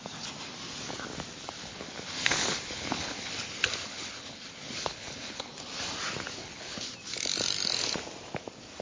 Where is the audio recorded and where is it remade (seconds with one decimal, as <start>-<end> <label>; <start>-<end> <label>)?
0.0-1.6 recorded; 1.6-3.3 remade; 3.3-3.8 recorded; 3.8-5.5 remade; 5.5-6.4 recorded; 6.4-6.9 remade; 6.9-8.8 recorded